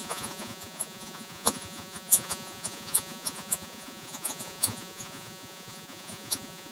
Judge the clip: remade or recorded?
remade